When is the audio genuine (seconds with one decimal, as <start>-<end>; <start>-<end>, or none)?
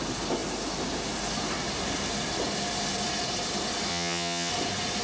0.0-3.9; 4.5-5.0